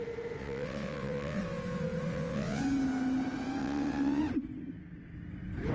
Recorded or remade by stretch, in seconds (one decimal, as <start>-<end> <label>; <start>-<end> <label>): 0.0-0.4 recorded; 0.4-1.4 remade; 1.4-2.1 recorded; 2.1-2.6 remade; 2.6-3.6 recorded; 3.6-4.2 remade; 4.2-5.7 recorded